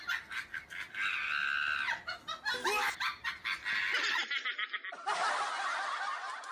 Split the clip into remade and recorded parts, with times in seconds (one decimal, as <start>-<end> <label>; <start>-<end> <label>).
0.0-6.5 recorded